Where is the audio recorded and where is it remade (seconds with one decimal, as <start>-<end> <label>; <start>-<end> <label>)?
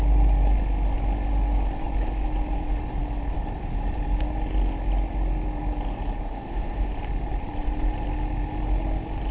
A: 0.0-6.3 recorded; 6.3-6.9 remade; 6.9-9.3 recorded